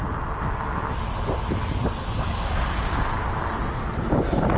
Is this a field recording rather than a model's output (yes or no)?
yes